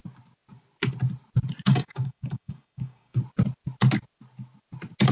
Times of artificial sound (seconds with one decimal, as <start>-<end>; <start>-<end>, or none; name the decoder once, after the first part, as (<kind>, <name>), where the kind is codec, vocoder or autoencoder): 1.7-3.2 (codec, DAC)